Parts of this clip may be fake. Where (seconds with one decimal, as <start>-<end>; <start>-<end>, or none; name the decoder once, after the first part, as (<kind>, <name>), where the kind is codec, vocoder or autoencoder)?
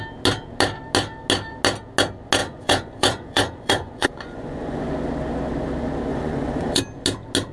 2.4-4.8 (vocoder, Vocos); 6.1-6.8